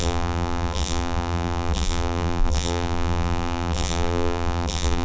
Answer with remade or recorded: remade